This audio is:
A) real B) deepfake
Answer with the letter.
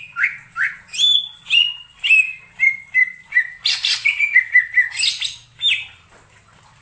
A